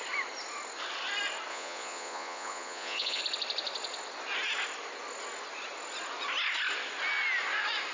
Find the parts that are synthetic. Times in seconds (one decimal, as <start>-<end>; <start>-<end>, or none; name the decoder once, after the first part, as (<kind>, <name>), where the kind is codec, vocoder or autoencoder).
1.5-3.2 (vocoder, Vocos)